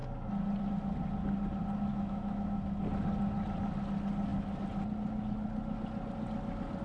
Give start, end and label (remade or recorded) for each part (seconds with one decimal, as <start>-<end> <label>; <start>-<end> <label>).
0.0-1.9 recorded; 1.9-2.6 remade; 2.6-6.8 recorded